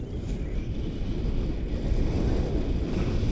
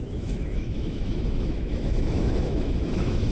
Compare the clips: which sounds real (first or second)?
first